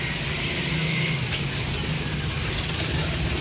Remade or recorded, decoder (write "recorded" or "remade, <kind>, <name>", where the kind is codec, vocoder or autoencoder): recorded